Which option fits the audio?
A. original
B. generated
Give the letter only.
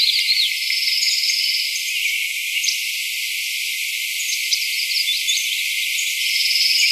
A